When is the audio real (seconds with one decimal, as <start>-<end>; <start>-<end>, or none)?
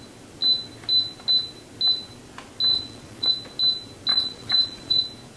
0.0-2.7; 3.3-4.1; 5.0-5.4